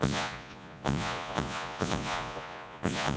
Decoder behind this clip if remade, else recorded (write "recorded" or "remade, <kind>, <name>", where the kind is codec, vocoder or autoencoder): remade, vocoder, Vocos